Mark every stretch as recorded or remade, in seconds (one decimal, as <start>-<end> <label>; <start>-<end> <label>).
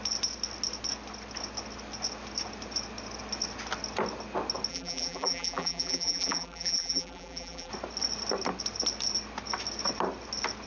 0.0-4.7 recorded; 4.7-7.7 remade; 7.7-10.7 recorded